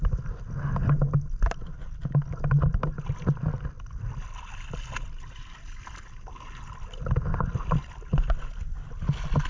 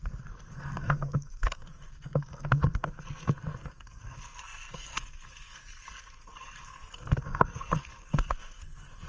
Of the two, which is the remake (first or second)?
second